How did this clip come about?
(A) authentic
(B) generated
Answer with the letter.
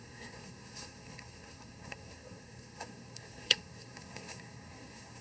B